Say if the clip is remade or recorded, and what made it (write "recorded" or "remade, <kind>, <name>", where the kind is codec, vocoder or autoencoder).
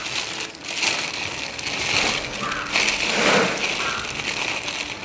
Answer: recorded